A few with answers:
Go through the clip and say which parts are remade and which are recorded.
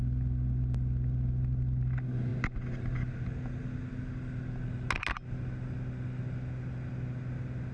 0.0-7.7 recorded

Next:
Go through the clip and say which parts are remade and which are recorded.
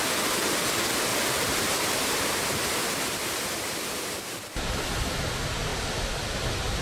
0.0-1.1 recorded; 1.1-4.3 remade; 4.3-5.7 recorded; 5.7-6.8 remade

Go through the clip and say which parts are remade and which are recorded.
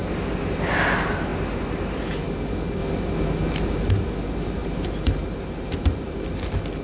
0.0-0.7 remade; 0.7-4.6 recorded; 4.6-6.1 remade; 6.1-6.8 recorded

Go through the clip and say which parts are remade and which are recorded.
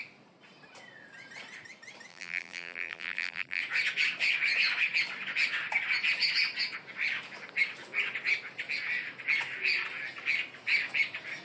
0.0-2.1 recorded; 2.1-3.6 remade; 3.6-11.4 recorded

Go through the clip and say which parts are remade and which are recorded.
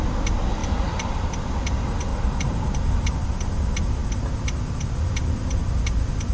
0.0-0.6 recorded; 0.6-1.4 remade; 1.4-2.1 recorded; 2.1-2.9 remade; 2.9-6.3 recorded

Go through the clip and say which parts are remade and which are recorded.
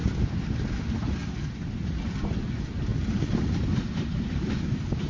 0.0-0.7 remade; 0.7-1.2 recorded; 1.2-2.0 remade; 2.0-2.9 recorded; 2.9-4.5 remade; 4.5-5.1 recorded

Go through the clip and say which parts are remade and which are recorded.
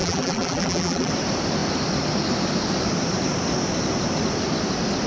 0.0-1.1 remade; 1.1-5.1 recorded